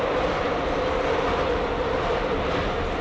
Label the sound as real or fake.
real